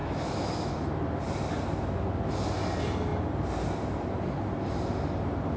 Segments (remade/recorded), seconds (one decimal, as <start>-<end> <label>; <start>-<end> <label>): 0.0-0.7 remade; 0.7-5.6 recorded